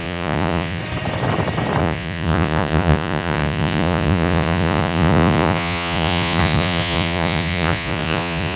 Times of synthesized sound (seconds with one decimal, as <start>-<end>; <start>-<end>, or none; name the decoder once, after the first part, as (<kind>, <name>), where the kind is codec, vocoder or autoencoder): 0.0-0.8 (vocoder, Vocos); 1.8-8.6